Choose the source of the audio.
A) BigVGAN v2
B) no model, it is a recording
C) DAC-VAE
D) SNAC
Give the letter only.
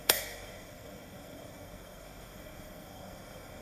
D